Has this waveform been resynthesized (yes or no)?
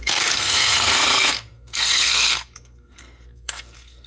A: yes